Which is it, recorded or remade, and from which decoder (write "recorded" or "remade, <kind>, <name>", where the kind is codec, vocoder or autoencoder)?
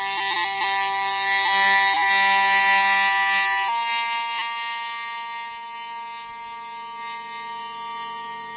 recorded